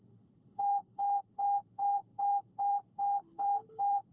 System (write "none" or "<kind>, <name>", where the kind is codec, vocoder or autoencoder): codec, HILCodec